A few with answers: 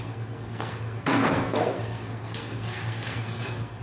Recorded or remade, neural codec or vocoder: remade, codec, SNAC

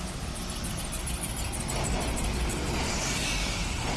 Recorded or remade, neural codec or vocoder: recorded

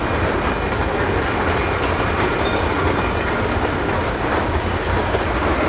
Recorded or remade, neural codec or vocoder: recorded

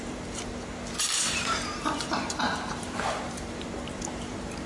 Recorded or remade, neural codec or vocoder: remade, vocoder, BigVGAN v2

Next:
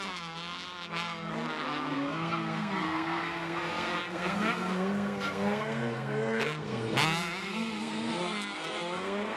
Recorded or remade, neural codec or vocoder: remade, codec, SNAC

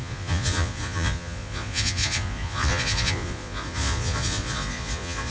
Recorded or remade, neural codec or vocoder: remade, vocoder, Vocos